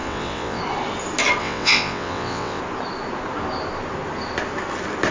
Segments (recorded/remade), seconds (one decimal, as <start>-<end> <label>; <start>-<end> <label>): 0.0-0.6 remade; 0.6-1.4 recorded; 1.4-2.6 remade; 2.6-5.1 recorded